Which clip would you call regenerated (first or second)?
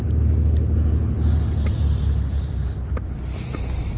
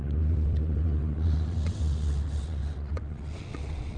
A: second